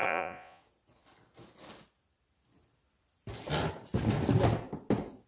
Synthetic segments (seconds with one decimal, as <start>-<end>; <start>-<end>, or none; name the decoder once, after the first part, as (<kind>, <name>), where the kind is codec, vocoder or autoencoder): 0.0-0.6 (vocoder, Vocos)